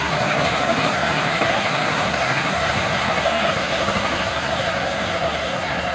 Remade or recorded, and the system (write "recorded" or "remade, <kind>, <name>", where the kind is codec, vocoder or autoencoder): remade, codec, SNAC